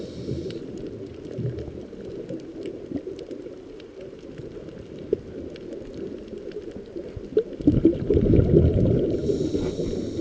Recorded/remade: recorded